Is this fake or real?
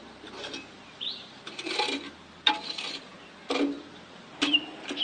real